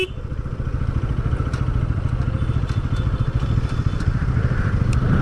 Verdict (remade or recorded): recorded